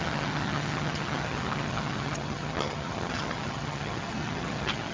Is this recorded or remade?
remade